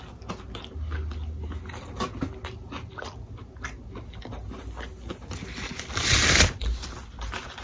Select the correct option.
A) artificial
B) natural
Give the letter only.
B